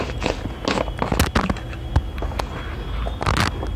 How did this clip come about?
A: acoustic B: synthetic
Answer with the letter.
A